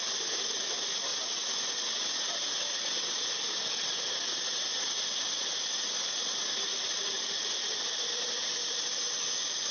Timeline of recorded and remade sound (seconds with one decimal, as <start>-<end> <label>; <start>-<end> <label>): 0.0-1.1 remade; 1.1-5.5 recorded; 5.5-9.7 remade